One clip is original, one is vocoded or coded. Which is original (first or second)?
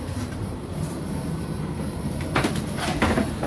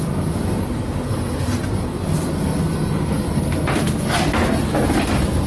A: second